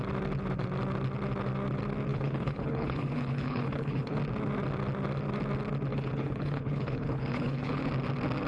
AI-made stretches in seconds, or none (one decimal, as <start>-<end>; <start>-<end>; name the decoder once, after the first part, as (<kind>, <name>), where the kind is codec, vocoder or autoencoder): 2.1-4.2 (codec, HILCodec); 5.9-7.9